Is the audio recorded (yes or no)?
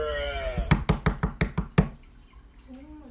yes